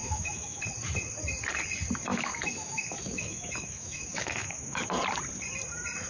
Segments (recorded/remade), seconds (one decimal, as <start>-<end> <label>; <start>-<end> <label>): 0.0-0.6 remade; 0.6-2.1 recorded; 2.1-4.8 remade; 4.8-6.1 recorded